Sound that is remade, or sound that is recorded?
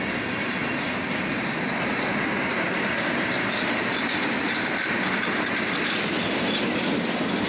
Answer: recorded